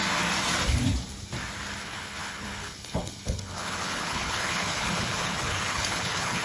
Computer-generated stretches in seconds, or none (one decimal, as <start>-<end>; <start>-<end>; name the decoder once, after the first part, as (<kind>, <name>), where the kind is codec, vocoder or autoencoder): 1.8-6.4 (codec, HILCodec)

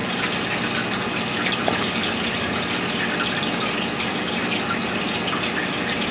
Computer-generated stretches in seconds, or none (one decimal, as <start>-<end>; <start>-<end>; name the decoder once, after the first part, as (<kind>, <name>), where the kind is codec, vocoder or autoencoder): none

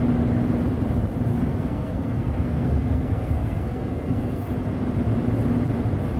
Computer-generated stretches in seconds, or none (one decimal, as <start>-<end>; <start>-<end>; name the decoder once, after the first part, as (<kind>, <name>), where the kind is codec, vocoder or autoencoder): 1.3-4.5 (codec, SNAC)